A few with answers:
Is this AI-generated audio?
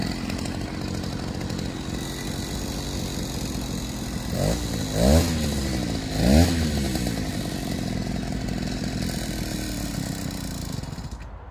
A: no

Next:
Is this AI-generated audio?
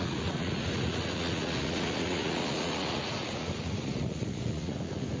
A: yes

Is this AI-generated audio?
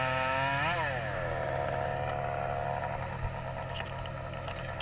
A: no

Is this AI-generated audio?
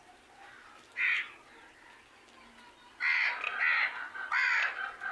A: no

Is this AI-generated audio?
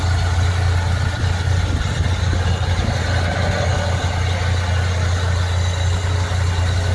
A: no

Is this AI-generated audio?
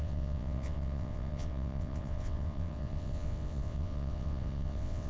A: yes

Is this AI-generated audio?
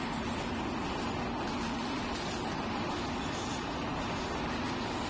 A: no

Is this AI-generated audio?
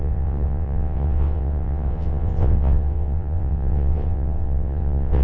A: yes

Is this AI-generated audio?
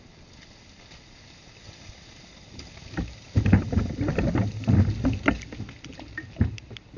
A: no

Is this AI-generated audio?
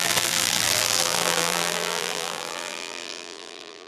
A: yes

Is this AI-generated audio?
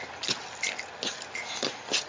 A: no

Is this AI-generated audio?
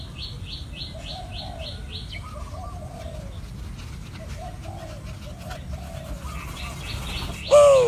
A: no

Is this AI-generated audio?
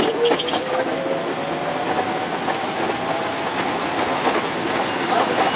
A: no